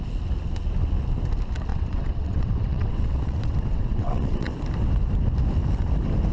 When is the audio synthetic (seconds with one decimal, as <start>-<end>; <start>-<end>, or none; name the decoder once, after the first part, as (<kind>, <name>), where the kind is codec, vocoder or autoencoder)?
1.7-4.5 (vocoder, WaveNeXt)